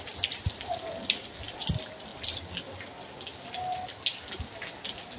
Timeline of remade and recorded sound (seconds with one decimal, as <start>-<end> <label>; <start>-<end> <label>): 0.0-5.2 recorded